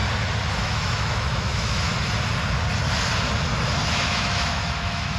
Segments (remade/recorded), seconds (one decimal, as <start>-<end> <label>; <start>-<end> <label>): 0.0-0.6 recorded; 0.6-1.9 remade; 1.9-3.9 recorded; 3.9-5.2 remade